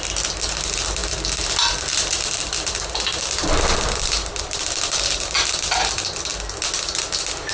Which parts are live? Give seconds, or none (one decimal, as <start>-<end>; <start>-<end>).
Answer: 6.3-6.8